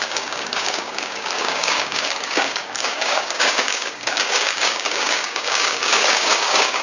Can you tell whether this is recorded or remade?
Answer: remade